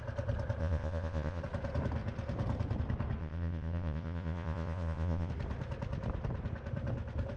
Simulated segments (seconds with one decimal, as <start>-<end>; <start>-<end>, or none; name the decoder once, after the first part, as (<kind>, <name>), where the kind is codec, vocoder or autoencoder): 0.6-1.4 (vocoder, Vocos); 3.2-5.3